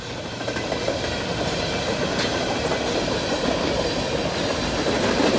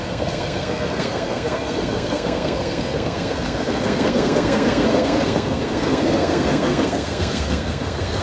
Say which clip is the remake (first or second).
second